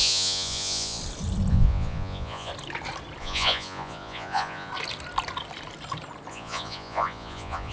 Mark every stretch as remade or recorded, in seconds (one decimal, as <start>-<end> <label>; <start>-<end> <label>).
0.0-1.0 remade; 1.0-1.5 recorded; 1.5-2.5 remade; 2.5-3.2 recorded; 3.2-4.7 remade; 4.7-6.3 recorded; 6.3-7.7 remade